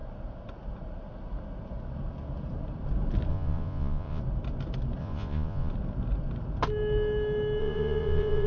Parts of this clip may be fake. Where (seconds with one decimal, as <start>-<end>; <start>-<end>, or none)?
3.3-4.2; 5.0-5.7; 7.6-8.5